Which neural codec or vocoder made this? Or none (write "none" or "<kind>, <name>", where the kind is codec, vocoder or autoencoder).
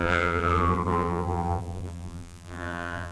vocoder, BigVGAN v2